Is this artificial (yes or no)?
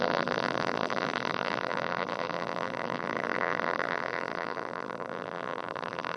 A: yes